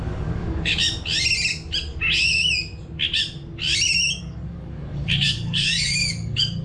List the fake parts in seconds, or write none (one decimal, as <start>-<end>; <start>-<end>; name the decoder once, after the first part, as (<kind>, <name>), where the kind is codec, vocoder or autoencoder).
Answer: 0.0-0.7 (codec, DAC); 4.2-6.6